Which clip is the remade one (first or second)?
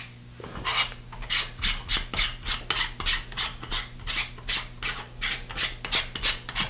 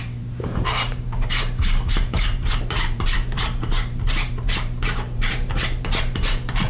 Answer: second